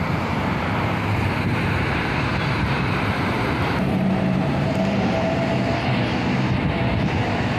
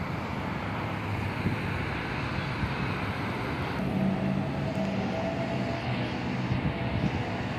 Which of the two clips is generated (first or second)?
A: first